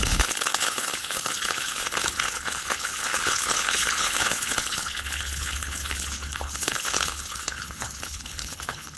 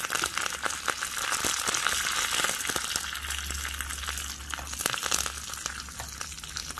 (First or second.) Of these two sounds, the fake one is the first